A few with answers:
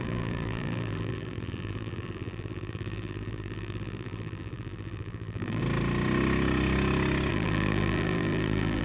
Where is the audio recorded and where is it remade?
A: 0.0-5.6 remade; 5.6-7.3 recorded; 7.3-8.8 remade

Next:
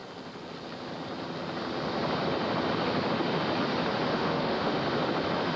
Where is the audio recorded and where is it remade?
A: 0.0-4.1 recorded; 4.1-4.8 remade; 4.8-5.6 recorded

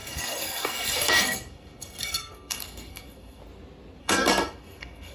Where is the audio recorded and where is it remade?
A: 0.0-3.4 remade; 3.4-4.0 recorded; 4.0-5.1 remade

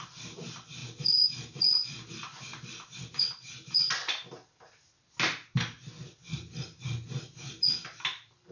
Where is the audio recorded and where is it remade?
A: 0.0-8.5 recorded

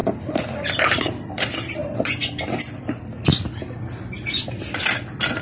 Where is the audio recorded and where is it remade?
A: 0.0-1.4 remade; 1.4-1.8 recorded; 1.8-2.8 remade; 2.8-5.4 recorded

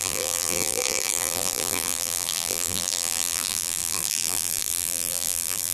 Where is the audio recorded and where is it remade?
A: 0.0-5.7 remade